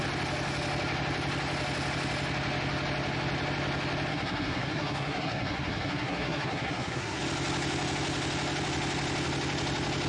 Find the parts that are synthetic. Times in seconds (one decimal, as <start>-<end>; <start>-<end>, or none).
4.1-7.2